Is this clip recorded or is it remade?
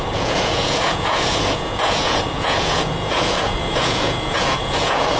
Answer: remade